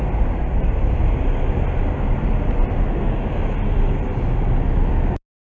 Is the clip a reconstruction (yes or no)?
no